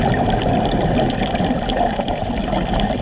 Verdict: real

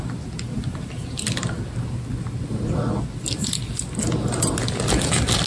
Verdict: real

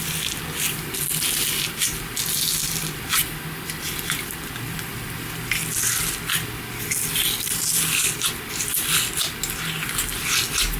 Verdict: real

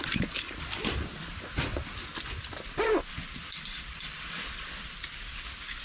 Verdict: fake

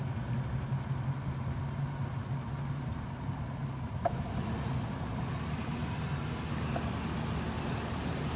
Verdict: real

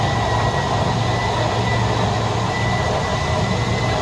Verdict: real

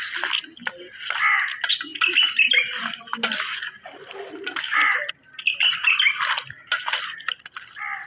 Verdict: real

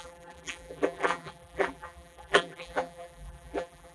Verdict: fake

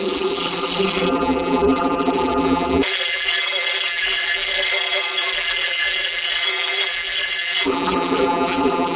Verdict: fake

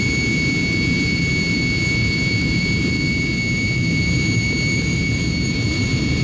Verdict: fake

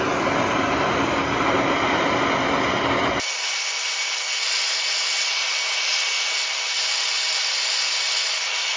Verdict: real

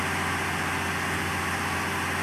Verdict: fake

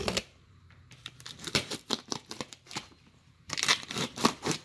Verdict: fake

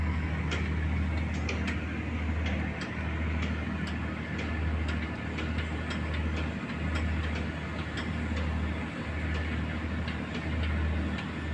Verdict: real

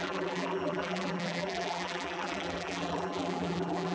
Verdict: fake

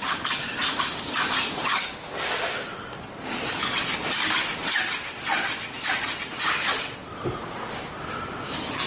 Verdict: real